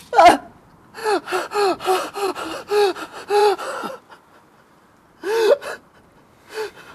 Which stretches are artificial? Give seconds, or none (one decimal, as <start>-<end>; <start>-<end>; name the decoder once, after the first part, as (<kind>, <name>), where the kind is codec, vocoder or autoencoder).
1.0-2.3 (vocoder, BigVGAN v2)